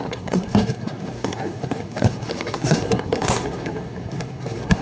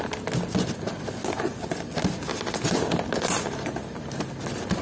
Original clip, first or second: second